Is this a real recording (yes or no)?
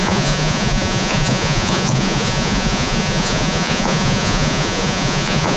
no